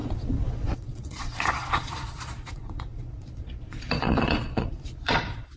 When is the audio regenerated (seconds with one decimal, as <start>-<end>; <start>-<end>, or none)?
0.0-5.6